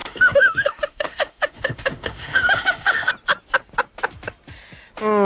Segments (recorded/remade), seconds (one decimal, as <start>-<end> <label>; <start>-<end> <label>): 0.0-3.1 remade; 3.1-5.2 recorded